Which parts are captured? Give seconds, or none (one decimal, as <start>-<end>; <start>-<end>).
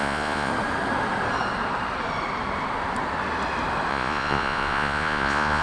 0.5-3.9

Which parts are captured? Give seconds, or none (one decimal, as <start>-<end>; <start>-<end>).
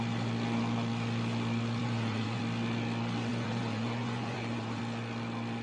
0.0-1.8; 2.4-3.3; 4.8-5.6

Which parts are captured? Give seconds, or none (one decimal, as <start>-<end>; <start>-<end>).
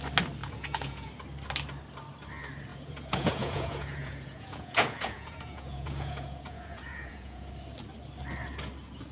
0.0-0.4; 1.1-2.7; 7.5-9.1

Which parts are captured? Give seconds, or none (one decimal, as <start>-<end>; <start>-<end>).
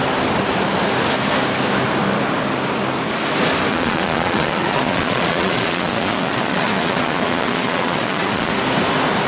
0.0-3.7; 8.5-9.3